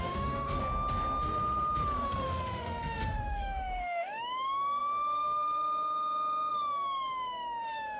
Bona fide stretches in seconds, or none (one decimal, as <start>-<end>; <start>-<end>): 0.6-1.2